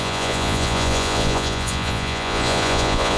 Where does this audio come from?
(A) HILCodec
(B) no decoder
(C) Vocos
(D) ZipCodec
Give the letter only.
C